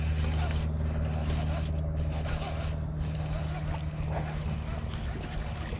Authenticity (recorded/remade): recorded